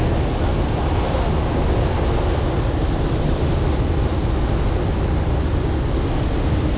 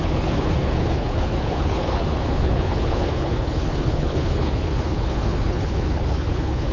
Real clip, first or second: first